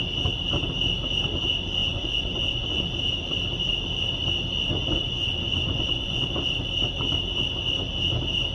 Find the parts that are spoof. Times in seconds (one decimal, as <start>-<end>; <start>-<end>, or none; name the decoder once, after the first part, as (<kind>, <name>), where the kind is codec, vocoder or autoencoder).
1.8-2.8 (vocoder, Vocos); 4.8-6.2

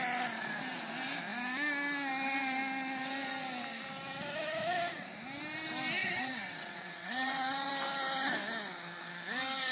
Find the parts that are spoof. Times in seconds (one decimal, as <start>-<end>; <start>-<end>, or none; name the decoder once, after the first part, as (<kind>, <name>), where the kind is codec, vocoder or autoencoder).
6.0-7.7 (vocoder, WaveNeXt)

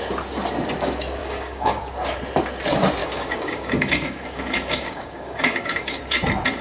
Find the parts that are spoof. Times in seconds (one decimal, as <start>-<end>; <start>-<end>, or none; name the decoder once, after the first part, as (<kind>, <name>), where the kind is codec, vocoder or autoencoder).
1.2-1.8 (codec, DAC); 3.0-6.0

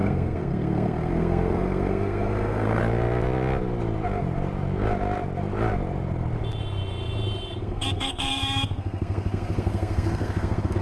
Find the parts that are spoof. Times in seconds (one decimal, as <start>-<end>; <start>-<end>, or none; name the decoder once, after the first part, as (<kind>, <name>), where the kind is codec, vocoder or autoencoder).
0.0-2.8 (codec, SNAC); 7.6-10.8

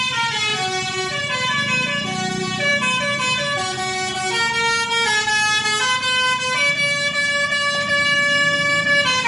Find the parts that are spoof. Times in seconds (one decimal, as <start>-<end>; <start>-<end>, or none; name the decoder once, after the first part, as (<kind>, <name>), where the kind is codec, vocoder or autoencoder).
none

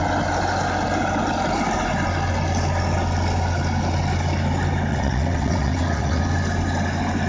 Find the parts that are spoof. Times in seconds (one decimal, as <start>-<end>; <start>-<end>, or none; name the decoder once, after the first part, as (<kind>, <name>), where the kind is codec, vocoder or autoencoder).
4.9-6.2 (vocoder, WaveNeXt)

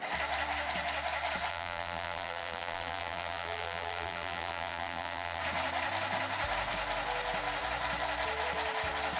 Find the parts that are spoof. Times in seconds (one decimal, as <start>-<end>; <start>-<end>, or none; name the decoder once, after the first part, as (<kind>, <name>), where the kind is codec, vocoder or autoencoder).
1.5-5.4 (vocoder, BigVGAN v2)